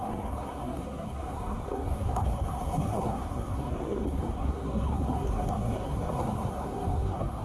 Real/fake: fake